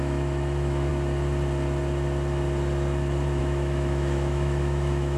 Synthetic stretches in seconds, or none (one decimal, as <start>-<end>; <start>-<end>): 0.0-0.9; 3.4-5.2